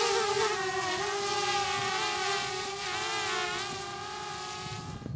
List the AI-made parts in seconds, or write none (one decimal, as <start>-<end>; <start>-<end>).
none